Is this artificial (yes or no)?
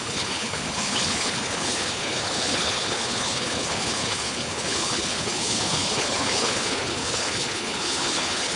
yes